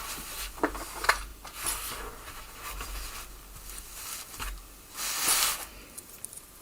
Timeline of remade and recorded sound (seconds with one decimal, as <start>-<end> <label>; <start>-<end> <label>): 0.0-5.7 recorded; 5.7-6.6 remade